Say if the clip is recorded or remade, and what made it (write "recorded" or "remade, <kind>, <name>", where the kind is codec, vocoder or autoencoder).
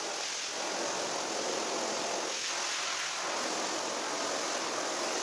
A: recorded